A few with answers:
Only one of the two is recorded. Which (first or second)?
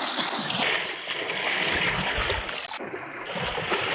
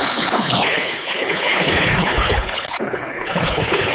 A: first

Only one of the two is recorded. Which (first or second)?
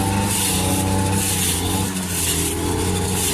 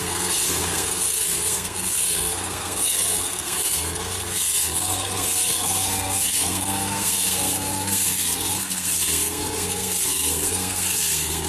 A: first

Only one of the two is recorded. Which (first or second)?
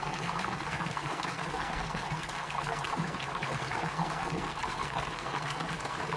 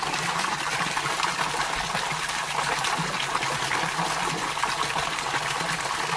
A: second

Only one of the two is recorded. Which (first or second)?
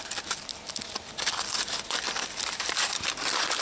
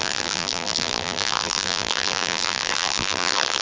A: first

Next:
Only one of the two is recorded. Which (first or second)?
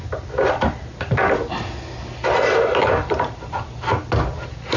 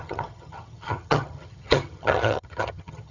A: first